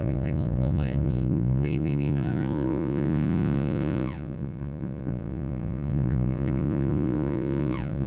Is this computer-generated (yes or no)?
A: yes